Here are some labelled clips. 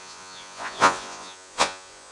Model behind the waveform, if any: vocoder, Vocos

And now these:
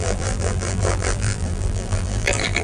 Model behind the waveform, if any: vocoder, BigVGAN v2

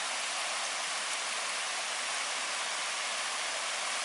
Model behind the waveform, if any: none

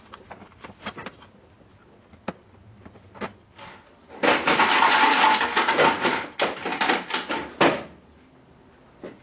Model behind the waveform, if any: none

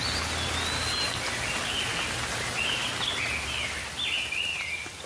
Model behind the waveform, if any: none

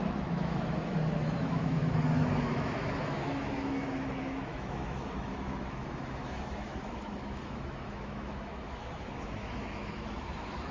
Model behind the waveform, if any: autoencoder, DAC-VAE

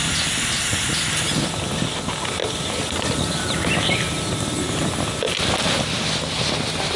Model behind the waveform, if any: none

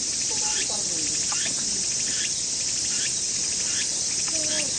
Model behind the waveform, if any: none